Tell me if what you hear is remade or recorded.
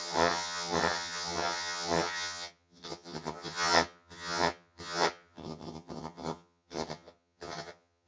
remade